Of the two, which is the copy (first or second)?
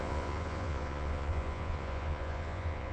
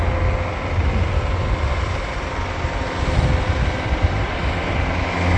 first